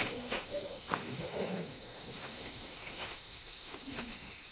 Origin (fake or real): fake